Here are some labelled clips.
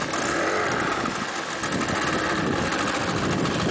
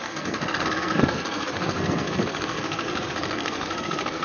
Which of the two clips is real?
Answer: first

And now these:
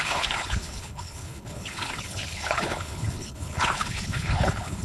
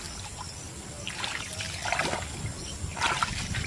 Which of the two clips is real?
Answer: second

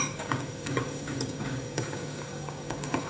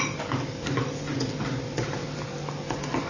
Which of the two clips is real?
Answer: second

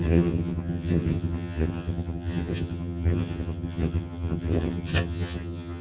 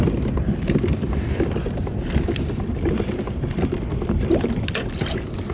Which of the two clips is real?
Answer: second